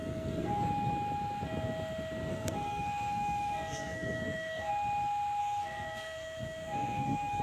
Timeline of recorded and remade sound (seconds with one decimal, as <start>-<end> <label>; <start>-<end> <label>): 0.0-0.7 remade; 0.7-2.3 recorded; 2.3-4.7 remade; 4.7-5.4 recorded; 5.4-7.4 remade